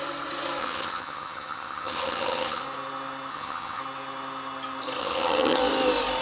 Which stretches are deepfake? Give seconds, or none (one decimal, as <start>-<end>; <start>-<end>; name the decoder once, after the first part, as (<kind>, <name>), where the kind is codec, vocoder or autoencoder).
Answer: 0.6-2.6 (vocoder, HiFi-GAN); 3.3-3.8; 5.0-5.6